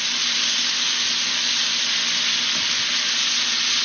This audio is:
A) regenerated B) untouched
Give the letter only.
B